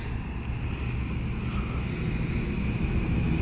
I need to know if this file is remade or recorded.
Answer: recorded